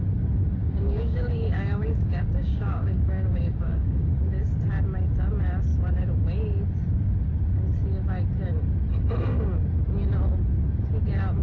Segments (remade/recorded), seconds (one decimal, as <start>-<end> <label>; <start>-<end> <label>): 0.0-0.6 recorded; 0.6-4.2 remade; 4.2-11.4 recorded